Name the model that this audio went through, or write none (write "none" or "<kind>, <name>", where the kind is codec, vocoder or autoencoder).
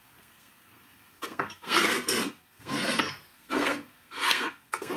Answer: codec, SNAC